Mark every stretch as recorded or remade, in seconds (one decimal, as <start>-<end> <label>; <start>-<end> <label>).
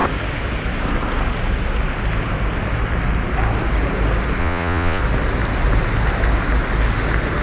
0.0-4.4 recorded; 4.4-5.0 remade; 5.0-7.4 recorded